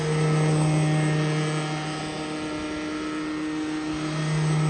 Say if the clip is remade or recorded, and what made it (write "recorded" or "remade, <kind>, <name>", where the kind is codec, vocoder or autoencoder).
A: recorded